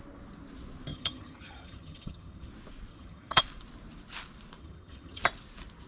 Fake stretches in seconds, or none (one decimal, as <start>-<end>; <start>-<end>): 0.9-2.5; 2.9-3.4; 4.6-5.2